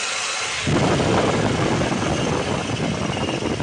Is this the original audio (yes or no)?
yes